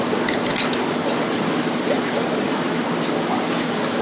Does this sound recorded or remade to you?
recorded